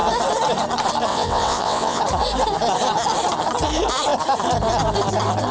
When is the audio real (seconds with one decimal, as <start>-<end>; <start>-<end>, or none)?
0.0-1.1; 2.0-5.5